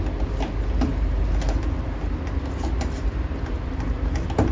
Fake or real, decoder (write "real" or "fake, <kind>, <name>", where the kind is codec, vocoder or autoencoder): real